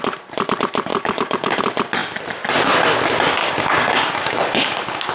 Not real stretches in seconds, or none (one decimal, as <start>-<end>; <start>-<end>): 0.9-1.6; 3.4-4.1